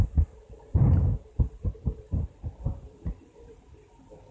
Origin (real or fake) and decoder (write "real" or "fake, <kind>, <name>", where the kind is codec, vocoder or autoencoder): real